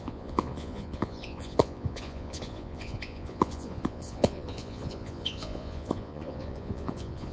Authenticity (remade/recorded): remade